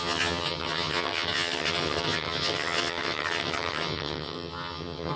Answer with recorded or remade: remade